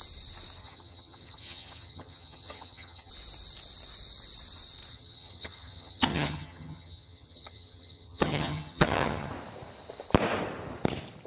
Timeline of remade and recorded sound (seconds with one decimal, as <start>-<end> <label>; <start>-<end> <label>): 0.0-0.6 recorded; 0.6-3.1 remade; 3.1-4.9 recorded; 4.9-9.3 remade; 9.3-11.3 recorded